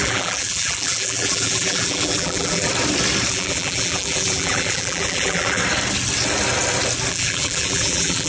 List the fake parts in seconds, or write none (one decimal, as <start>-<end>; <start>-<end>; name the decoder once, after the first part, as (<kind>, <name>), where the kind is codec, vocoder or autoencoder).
0.0-2.7 (vocoder, BigVGAN v2); 3.3-5.6; 7.1-8.3